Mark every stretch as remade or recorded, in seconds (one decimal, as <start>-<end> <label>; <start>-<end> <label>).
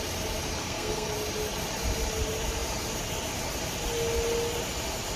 0.0-0.6 recorded; 0.6-1.1 remade; 1.1-5.2 recorded